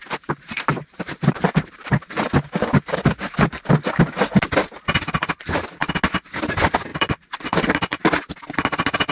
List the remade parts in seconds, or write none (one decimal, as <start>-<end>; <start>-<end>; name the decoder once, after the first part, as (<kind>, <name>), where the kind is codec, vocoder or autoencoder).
0.0-2.4 (vocoder, BigVGAN v2); 6.9-8.0